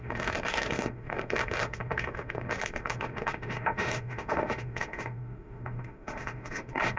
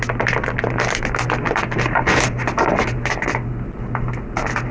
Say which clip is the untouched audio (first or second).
second